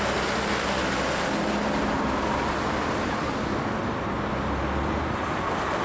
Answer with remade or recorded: recorded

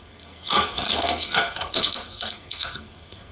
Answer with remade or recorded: remade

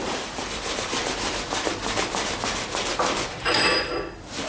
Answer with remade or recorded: recorded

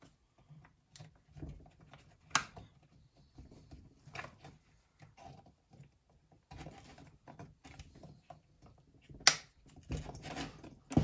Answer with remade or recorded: recorded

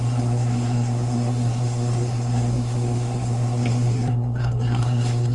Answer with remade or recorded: remade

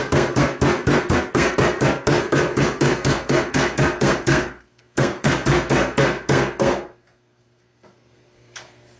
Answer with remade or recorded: remade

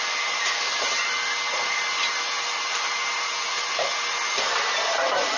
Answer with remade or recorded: recorded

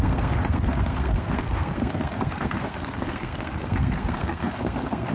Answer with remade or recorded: remade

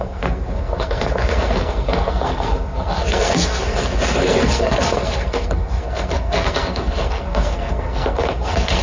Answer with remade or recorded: remade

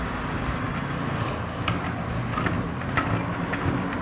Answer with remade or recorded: recorded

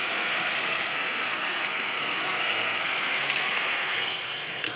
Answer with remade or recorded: remade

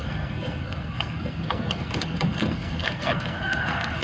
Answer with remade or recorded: remade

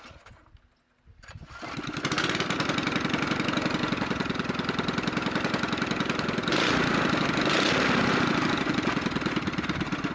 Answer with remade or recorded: recorded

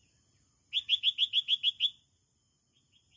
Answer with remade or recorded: recorded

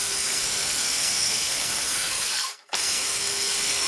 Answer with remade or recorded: remade